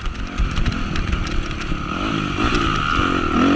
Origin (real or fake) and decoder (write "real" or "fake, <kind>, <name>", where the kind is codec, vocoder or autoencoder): real